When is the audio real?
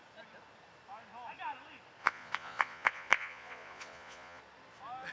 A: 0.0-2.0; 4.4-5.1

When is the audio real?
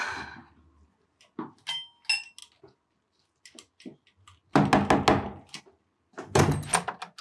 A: 0.0-7.2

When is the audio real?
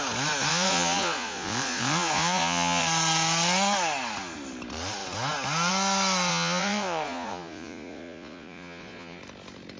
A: 0.0-0.5; 2.8-6.3; 9.2-9.8